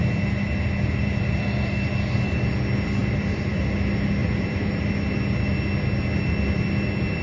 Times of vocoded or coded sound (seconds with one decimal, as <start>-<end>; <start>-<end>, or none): 3.0-3.6; 4.2-4.9

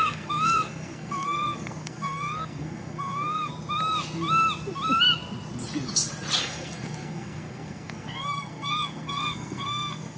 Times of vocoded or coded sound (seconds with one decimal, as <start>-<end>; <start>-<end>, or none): 0.0-3.5; 6.4-10.2

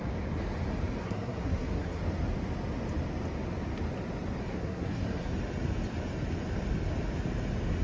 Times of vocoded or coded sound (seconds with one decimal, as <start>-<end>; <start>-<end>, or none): 1.0-2.0; 4.4-5.3

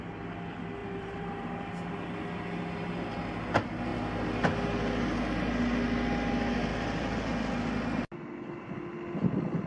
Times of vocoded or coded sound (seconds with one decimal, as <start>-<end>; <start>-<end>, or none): 0.8-1.9; 6.7-7.3